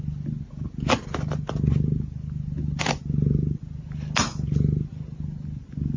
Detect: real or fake real